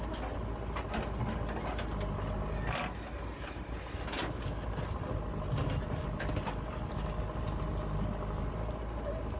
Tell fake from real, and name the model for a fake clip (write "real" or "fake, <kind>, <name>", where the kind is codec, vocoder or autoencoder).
real